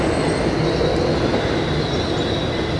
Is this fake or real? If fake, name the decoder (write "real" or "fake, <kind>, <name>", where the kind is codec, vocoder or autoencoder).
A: real